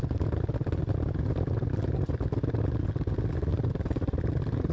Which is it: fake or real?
real